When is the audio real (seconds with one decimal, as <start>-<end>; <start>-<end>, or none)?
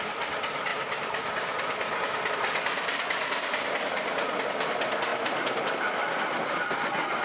0.0-0.7; 2.3-7.2